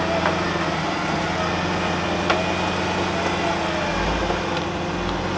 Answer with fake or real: real